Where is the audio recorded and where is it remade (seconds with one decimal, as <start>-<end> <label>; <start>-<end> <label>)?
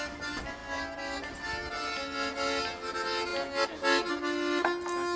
0.0-5.2 recorded